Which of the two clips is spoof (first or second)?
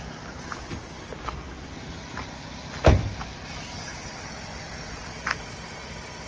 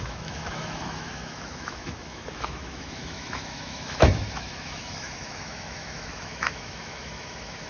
second